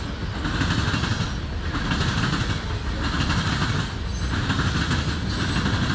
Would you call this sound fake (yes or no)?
no